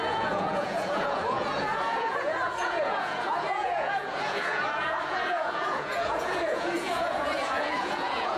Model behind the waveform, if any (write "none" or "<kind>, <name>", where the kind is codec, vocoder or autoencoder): vocoder, Vocos